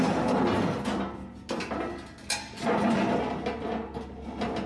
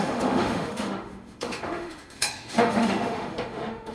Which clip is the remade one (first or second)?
second